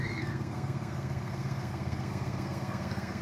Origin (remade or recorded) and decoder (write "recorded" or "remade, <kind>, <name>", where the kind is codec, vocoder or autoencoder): remade, codec, SNAC